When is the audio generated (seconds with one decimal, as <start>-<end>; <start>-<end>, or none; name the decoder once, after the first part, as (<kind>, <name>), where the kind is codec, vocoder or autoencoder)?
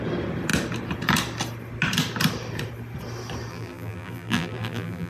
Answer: 3.5-5.1 (vocoder, BigVGAN v2)